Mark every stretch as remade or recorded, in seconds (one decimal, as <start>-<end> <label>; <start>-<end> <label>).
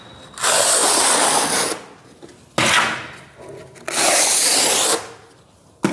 0.0-5.9 recorded